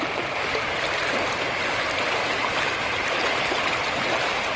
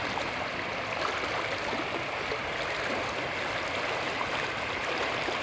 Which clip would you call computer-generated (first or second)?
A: first